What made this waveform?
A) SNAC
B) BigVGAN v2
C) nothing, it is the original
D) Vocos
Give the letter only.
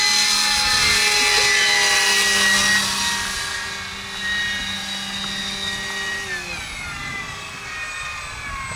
C